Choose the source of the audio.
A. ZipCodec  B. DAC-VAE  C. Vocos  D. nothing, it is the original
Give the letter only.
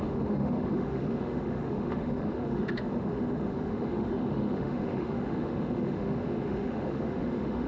B